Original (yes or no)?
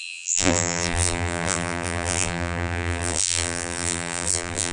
no